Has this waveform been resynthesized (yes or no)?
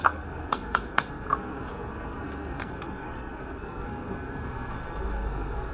yes